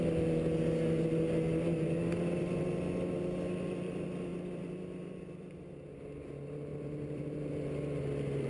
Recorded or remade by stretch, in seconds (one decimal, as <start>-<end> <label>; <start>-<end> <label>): 0.0-4.3 recorded; 4.3-5.5 remade; 5.5-6.7 recorded; 6.7-7.5 remade; 7.5-8.5 recorded